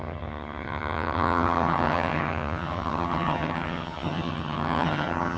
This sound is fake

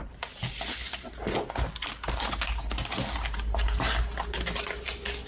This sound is real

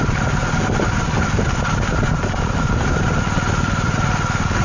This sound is real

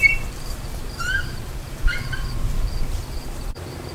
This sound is fake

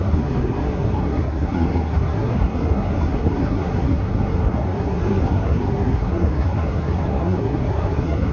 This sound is fake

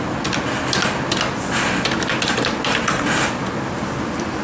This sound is real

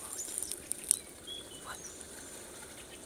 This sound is real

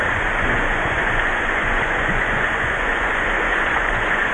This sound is fake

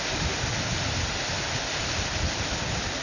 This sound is real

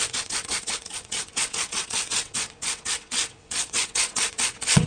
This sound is fake